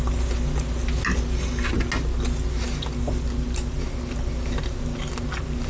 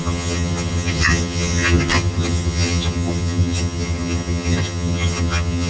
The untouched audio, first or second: first